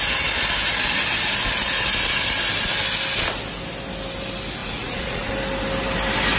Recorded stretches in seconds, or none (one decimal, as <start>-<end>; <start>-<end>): 0.0-4.6; 5.3-6.4